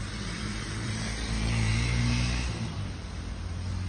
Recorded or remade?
remade